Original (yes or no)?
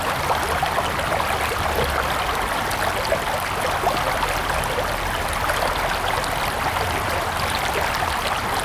yes